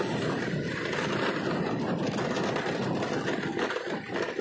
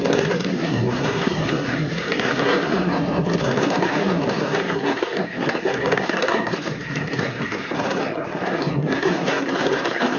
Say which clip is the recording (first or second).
first